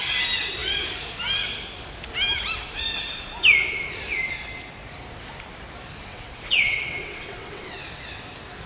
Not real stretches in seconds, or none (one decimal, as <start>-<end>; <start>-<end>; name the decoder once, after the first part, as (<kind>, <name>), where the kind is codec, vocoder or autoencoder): 6.0-7.7 (vocoder, WaveNeXt)